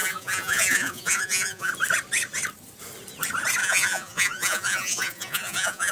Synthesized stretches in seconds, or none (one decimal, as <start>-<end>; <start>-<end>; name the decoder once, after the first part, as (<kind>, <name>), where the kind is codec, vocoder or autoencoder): 0.0-1.7 (vocoder, Vocos); 3.6-5.9